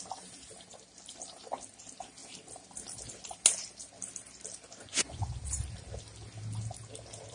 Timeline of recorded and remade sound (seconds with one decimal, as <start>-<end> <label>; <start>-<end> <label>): 0.0-4.8 recorded; 4.8-5.4 remade; 5.4-7.3 recorded